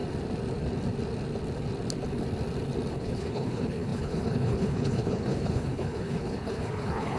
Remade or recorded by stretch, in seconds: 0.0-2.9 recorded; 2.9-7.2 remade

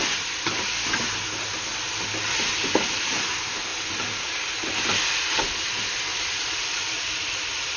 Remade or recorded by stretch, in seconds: 0.0-1.7 recorded; 1.7-2.7 remade; 2.7-6.1 recorded; 6.1-7.8 remade